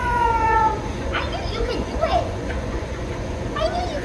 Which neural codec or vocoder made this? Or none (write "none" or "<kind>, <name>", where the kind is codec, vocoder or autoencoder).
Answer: vocoder, Vocos